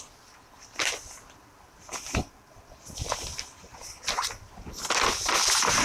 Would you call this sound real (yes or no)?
yes